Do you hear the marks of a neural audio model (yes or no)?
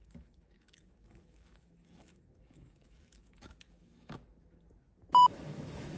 yes